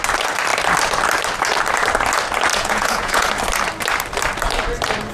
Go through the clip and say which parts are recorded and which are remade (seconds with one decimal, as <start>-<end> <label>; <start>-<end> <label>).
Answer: 0.0-2.5 recorded; 2.5-3.3 remade; 3.3-5.1 recorded